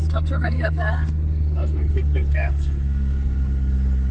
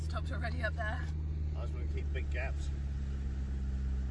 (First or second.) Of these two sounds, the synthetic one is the first